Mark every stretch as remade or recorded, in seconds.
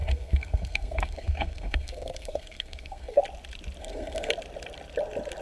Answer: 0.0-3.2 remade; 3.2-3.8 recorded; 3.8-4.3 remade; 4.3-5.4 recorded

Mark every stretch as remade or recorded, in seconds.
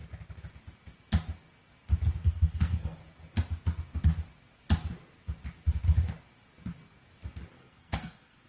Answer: 0.0-2.2 recorded; 2.2-3.0 remade; 3.0-7.5 recorded; 7.5-8.5 remade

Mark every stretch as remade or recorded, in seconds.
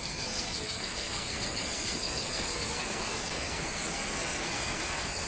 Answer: 0.0-5.3 remade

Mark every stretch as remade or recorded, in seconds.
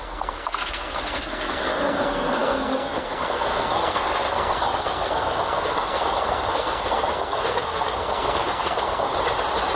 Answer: 0.0-9.1 remade; 9.1-9.8 recorded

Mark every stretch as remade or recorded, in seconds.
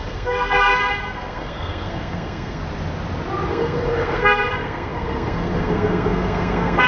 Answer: 0.0-2.6 remade; 2.6-3.5 recorded; 3.5-6.9 remade